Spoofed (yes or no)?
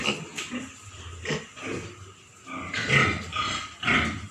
no